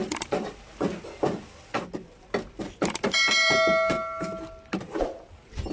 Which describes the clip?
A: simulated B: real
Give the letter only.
B